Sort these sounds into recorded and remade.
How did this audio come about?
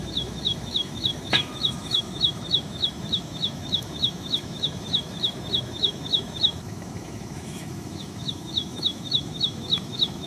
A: remade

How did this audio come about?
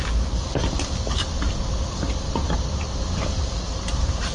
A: recorded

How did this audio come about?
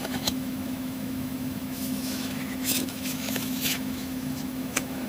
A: remade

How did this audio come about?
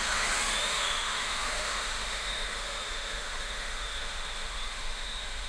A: remade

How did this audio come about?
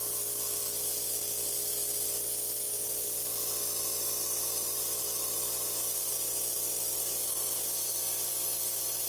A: recorded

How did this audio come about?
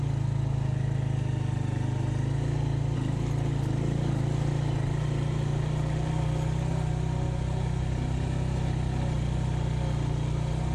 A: recorded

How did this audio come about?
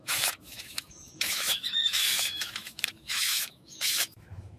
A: remade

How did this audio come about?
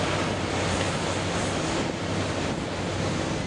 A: recorded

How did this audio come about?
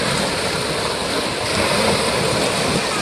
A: recorded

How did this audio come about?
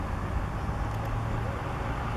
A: recorded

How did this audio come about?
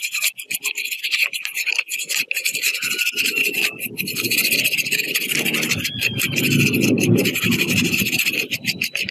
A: recorded